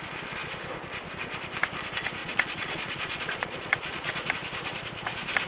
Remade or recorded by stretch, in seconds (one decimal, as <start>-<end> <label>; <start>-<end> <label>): 0.0-2.2 recorded; 2.2-4.3 remade; 4.3-5.5 recorded